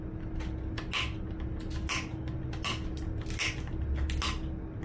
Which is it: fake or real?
real